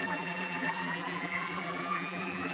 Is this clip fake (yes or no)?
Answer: yes